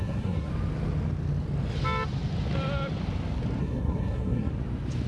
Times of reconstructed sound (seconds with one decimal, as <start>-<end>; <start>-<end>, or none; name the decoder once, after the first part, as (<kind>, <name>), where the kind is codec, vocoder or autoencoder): 0.0-0.5 (codec, SNAC); 3.6-4.5

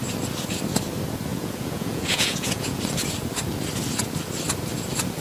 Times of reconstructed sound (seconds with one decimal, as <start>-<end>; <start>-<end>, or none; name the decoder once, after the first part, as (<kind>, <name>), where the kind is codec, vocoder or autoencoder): 1.3-2.8 (vocoder, Vocos)

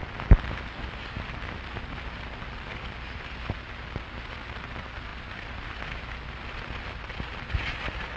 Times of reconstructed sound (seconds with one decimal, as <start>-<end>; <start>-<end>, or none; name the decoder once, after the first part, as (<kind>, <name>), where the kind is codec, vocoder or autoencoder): none

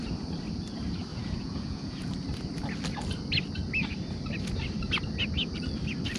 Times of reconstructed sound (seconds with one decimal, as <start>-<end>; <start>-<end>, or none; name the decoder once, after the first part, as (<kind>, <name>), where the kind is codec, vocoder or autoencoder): 1.1-2.1 (vocoder, Vocos)